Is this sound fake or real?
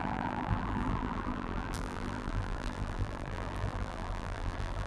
fake